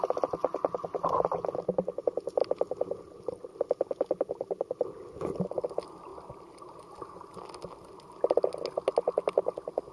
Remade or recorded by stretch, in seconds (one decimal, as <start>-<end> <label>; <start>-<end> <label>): 0.0-9.9 recorded